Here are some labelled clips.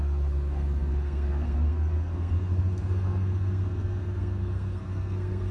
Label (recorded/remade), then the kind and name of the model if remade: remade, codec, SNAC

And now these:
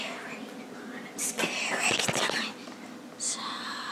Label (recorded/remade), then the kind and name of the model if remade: recorded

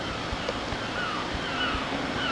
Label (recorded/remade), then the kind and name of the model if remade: recorded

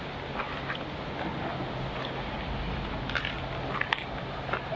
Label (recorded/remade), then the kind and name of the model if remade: recorded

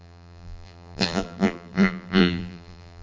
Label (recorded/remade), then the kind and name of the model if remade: remade, vocoder, BigVGAN v2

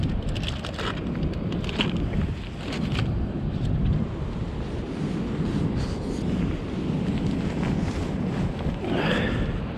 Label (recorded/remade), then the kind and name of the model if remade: recorded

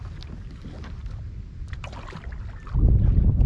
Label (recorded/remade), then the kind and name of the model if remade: recorded